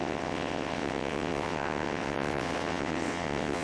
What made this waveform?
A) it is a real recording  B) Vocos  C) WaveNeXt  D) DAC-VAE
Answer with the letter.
C